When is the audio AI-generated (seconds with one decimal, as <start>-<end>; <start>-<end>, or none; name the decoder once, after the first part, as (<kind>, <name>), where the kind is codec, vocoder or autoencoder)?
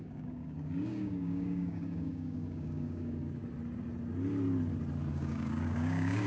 0.0-3.4 (codec, DAC); 5.1-6.3